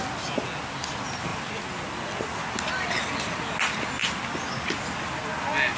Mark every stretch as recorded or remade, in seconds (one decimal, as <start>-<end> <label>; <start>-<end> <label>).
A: 0.0-5.8 recorded